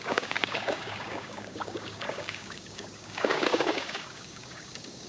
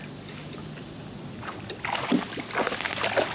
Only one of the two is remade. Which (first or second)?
first